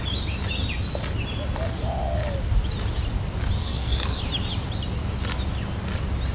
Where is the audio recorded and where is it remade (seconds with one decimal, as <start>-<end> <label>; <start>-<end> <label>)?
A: 0.0-3.6 recorded; 3.6-4.2 remade; 4.2-6.3 recorded